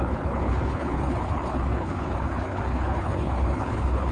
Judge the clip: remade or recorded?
remade